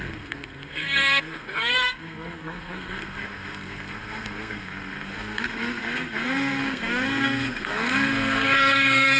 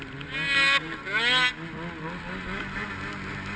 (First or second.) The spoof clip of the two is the first